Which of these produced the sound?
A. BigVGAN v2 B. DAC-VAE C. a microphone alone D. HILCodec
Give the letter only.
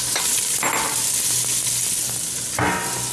C